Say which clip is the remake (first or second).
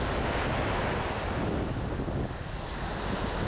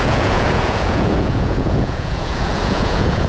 second